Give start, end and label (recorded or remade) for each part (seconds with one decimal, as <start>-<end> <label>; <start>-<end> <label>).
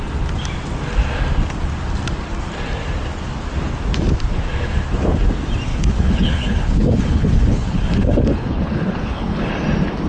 0.0-5.7 recorded; 5.7-9.5 remade; 9.5-10.1 recorded